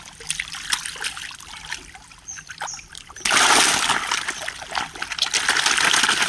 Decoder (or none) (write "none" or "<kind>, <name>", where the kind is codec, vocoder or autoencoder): none